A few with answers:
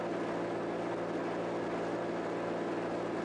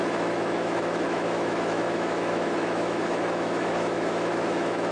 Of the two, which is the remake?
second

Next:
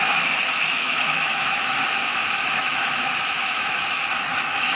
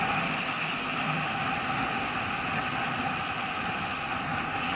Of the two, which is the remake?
first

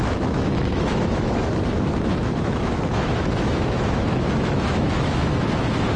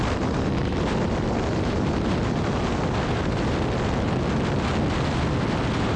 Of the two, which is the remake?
first